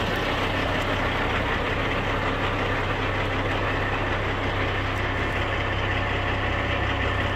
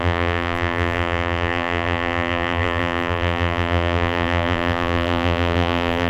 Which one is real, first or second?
first